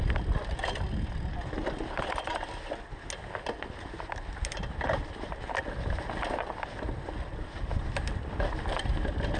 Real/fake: real